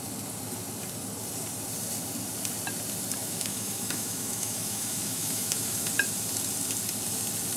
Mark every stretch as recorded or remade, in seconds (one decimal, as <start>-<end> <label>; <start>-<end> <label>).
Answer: 0.0-3.2 recorded; 3.2-5.9 remade; 5.9-7.6 recorded